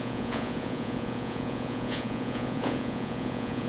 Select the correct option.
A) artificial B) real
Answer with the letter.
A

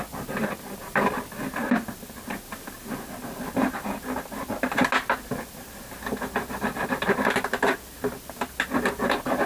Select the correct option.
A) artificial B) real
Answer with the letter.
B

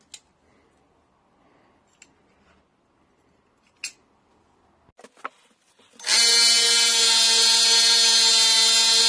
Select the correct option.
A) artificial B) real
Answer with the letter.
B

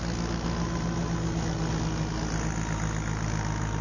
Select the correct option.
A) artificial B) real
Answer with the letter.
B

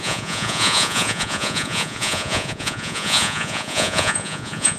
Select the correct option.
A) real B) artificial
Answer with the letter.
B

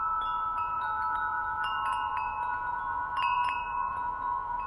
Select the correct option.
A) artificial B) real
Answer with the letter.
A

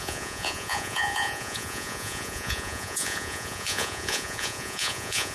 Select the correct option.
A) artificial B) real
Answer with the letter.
A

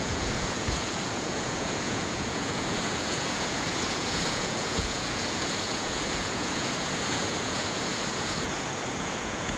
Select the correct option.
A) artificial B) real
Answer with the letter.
A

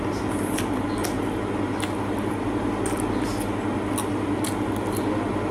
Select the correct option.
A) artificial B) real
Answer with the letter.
B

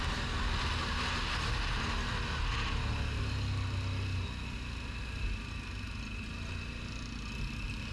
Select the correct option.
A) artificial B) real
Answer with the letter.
B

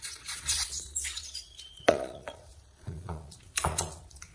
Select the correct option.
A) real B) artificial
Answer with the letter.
B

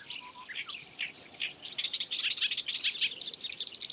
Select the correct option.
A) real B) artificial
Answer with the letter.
A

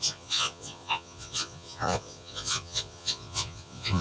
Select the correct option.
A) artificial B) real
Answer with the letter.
A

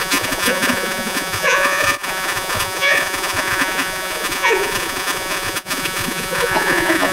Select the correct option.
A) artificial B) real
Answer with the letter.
A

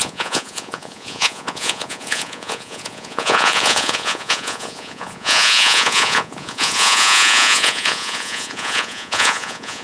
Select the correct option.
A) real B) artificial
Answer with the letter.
B